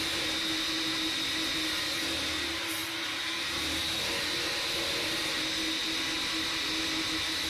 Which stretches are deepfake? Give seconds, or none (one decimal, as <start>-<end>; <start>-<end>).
none